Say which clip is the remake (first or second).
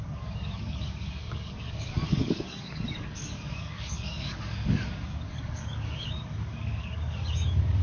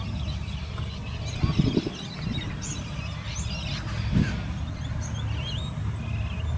first